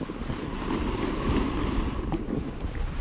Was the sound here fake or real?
real